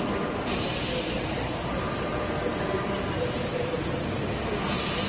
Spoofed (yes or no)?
yes